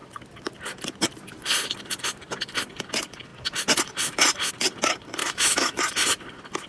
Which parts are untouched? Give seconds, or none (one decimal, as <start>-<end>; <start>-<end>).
0.0-5.2; 5.8-6.7